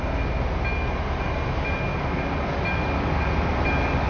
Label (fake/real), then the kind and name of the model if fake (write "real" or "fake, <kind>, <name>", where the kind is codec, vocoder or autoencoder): real